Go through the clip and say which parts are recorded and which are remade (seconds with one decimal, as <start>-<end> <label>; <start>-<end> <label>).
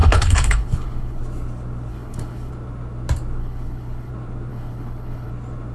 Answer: 0.0-1.2 remade; 1.2-1.9 recorded; 1.9-2.5 remade; 2.5-3.4 recorded; 3.4-4.1 remade; 4.1-4.5 recorded; 4.5-5.3 remade; 5.3-5.7 recorded